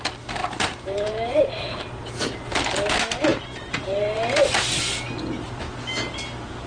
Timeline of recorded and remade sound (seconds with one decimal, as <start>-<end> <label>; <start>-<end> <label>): 0.0-0.4 recorded; 0.4-2.1 remade; 2.1-3.3 recorded; 3.3-4.7 remade; 4.7-6.7 recorded